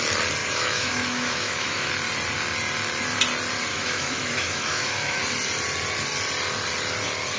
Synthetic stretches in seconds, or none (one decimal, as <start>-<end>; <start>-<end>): 0.4-1.9; 3.7-5.2